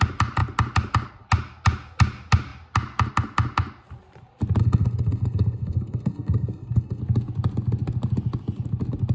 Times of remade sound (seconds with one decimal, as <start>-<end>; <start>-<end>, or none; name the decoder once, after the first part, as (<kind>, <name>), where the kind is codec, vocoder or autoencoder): 4.6-7.0 (codec, SNAC)